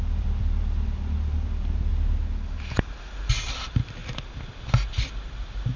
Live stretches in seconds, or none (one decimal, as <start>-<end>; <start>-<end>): 1.9-3.3; 4.0-4.9